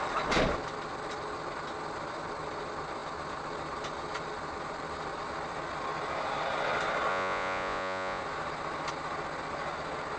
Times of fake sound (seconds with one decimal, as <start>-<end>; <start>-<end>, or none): 7.1-8.2

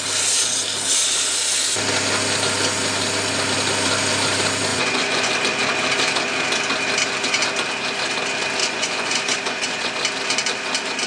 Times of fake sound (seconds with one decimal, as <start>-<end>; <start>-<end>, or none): 4.7-5.3; 8.6-9.9

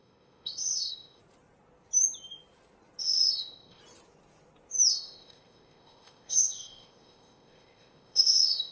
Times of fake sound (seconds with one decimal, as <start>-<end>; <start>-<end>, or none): 0.0-1.2; 3.0-3.8; 4.9-8.7

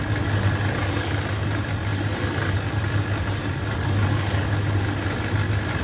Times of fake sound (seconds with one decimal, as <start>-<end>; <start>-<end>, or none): none

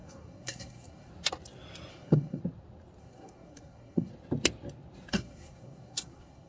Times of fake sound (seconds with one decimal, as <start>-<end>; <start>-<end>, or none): 0.0-1.1; 1.9-2.4; 3.0-4.1; 5.1-6.5